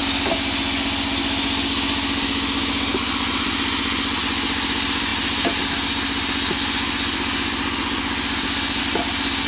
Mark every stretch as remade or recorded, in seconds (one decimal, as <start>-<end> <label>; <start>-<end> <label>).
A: 0.0-9.5 recorded